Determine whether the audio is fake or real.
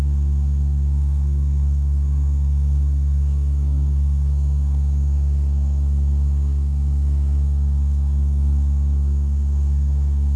fake